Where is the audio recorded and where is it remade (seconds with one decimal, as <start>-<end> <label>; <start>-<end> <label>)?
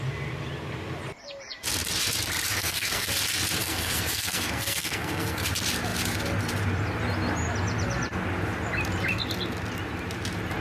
0.0-2.5 recorded; 2.5-3.1 remade; 3.1-3.6 recorded; 3.6-5.5 remade; 5.5-10.6 recorded